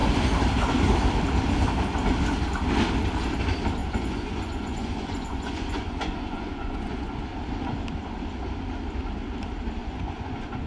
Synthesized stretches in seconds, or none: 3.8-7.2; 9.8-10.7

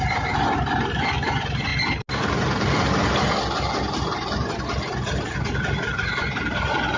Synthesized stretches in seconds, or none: 0.0-1.7; 5.9-7.0